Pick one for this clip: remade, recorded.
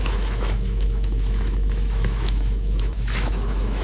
remade